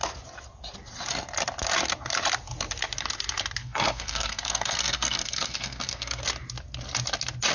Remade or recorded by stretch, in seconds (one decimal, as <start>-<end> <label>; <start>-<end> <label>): 0.0-3.6 recorded; 3.6-6.2 remade; 6.2-7.5 recorded